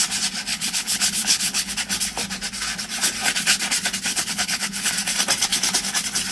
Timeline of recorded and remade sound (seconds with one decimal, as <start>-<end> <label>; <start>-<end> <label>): 0.0-0.5 recorded; 0.5-1.7 remade; 1.7-4.1 recorded; 4.1-4.9 remade; 4.9-6.3 recorded